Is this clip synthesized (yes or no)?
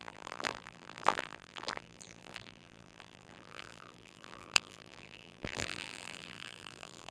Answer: yes